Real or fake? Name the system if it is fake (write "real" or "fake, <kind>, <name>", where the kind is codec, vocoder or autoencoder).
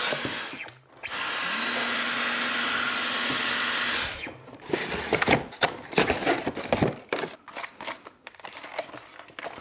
real